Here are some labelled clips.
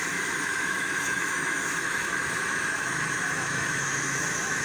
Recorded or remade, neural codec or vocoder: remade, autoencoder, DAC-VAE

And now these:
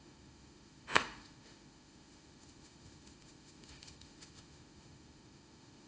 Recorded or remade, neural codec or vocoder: remade, autoencoder, DAC-VAE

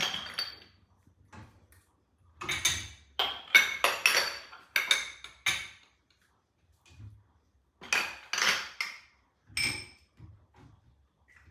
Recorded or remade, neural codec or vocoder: recorded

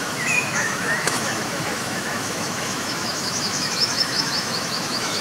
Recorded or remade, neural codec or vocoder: remade, autoencoder, DAC-VAE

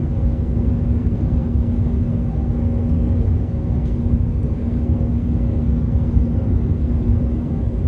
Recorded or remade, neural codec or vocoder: remade, codec, SNAC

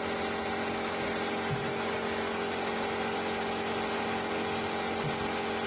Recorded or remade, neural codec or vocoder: recorded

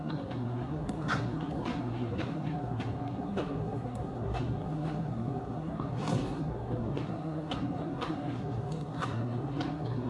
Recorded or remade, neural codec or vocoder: remade, codec, SNAC